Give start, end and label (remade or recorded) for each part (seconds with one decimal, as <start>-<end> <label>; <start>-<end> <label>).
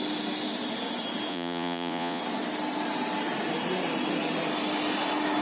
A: 0.0-1.3 recorded; 1.3-2.2 remade; 2.2-5.4 recorded